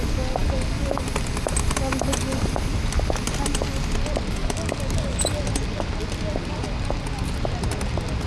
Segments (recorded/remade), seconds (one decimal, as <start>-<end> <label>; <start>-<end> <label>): 0.0-4.4 recorded; 4.4-5.2 remade; 5.2-8.3 recorded